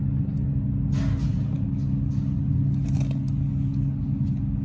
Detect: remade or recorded recorded